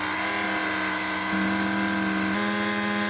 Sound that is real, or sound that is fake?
real